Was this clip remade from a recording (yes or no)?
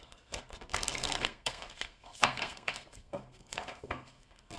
yes